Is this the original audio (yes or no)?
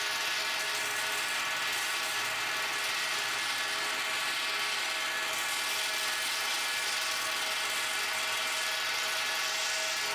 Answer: yes